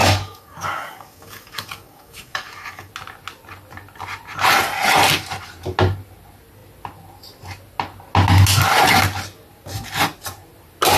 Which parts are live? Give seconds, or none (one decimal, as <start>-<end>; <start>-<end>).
2.9-11.0